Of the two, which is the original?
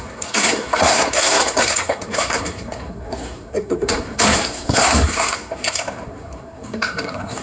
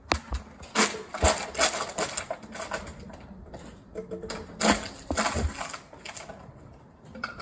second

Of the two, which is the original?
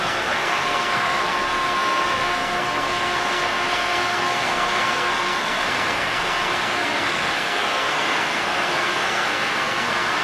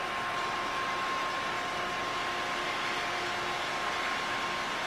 second